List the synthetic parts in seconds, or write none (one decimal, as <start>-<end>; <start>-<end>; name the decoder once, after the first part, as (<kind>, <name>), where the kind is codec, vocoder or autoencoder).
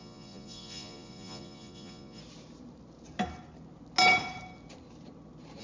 0.0-2.2 (vocoder, Vocos)